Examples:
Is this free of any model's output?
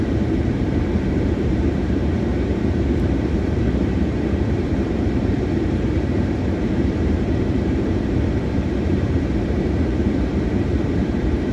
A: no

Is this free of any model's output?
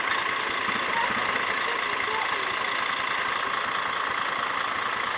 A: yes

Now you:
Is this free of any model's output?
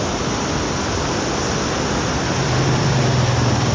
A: yes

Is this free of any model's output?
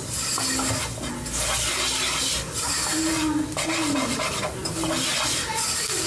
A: yes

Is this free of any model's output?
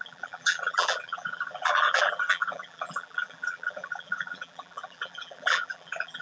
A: no